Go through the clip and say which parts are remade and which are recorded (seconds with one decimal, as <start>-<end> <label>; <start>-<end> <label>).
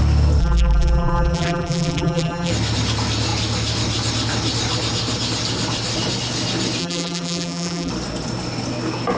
0.0-0.4 recorded; 0.4-2.5 remade; 2.5-6.8 recorded; 6.8-7.9 remade; 7.9-9.2 recorded